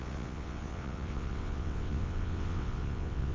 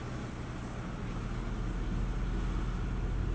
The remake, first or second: first